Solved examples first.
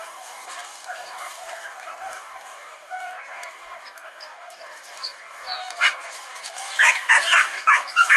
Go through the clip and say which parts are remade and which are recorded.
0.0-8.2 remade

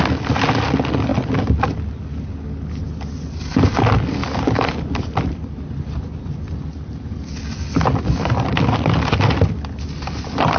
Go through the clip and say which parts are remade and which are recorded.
0.0-10.6 recorded

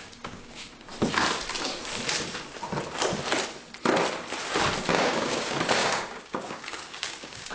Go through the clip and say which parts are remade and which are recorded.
0.0-0.9 remade; 0.9-4.9 recorded; 4.9-7.5 remade

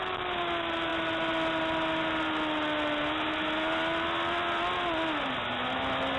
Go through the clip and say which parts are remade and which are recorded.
0.0-6.2 recorded

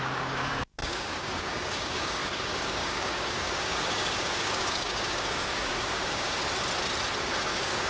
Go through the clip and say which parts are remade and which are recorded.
0.0-6.4 remade; 6.4-7.2 recorded; 7.2-7.9 remade

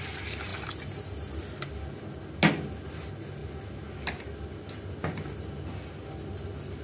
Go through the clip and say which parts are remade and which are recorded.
0.0-6.8 recorded